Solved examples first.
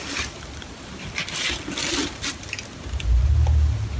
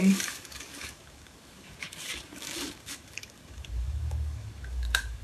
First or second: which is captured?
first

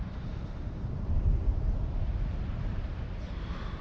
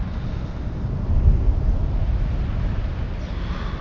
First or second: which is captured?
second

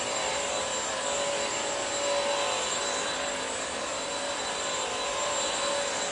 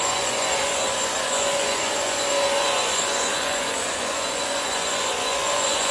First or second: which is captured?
first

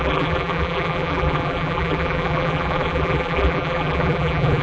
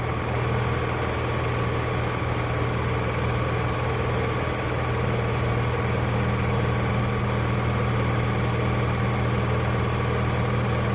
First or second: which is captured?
second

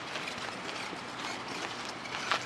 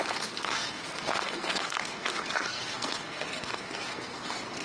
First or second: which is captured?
first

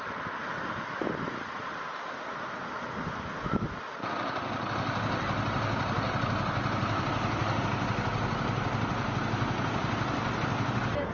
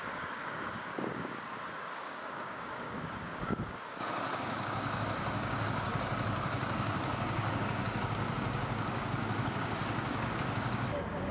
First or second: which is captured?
first